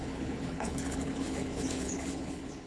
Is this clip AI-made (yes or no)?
yes